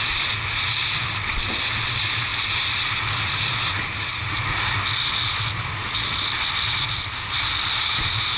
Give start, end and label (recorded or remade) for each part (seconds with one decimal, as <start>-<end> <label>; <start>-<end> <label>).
0.0-8.4 recorded